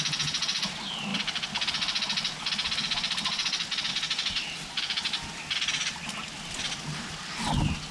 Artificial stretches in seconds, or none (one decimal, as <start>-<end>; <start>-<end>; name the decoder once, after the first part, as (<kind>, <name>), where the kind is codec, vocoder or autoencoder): none